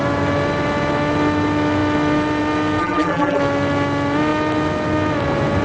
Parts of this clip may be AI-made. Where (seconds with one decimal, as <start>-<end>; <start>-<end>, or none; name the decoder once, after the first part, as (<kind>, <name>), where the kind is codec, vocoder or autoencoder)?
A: 2.8-3.4 (vocoder, BigVGAN v2)